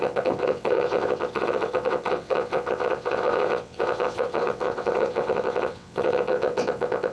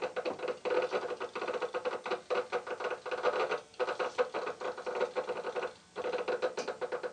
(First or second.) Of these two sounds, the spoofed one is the first